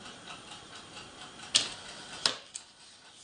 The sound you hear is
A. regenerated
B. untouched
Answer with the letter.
B